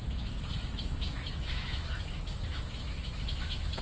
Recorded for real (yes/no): no